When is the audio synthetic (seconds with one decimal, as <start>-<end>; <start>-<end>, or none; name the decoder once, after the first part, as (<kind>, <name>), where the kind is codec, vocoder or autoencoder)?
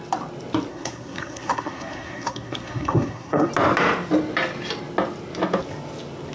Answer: 0.7-3.5 (codec, SNAC)